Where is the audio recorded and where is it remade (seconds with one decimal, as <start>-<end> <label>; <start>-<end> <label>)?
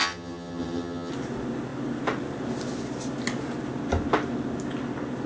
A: 0.0-1.1 remade; 1.1-5.3 recorded